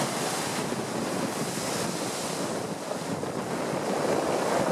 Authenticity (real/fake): real